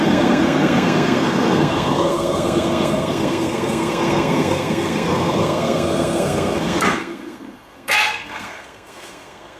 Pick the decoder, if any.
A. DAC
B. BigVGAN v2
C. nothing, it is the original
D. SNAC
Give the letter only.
D